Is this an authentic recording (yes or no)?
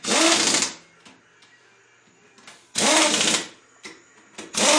yes